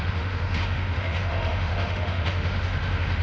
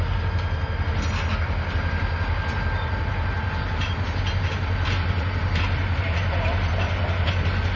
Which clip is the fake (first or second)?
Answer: first